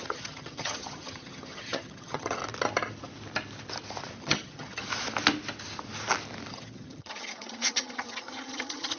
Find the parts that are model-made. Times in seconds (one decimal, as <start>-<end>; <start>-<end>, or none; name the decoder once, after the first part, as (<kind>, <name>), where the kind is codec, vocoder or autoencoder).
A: 0.0-2.4 (vocoder, HiFi-GAN); 4.2-4.9; 6.5-9.0